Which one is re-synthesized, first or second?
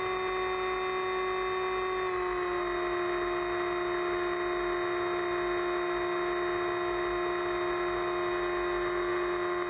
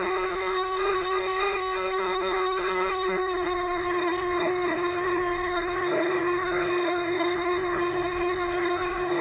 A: second